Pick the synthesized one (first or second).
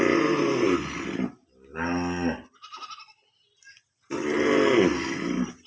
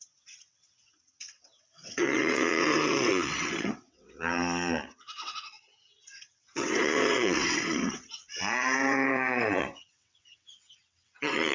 second